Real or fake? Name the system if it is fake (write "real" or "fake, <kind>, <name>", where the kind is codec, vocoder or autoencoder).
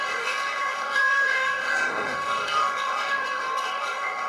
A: fake, autoencoder, DAC-VAE